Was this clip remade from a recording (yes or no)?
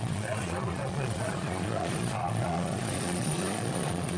yes